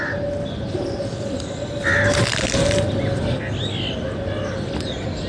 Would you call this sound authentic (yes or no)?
yes